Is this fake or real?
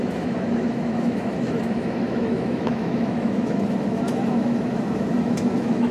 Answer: fake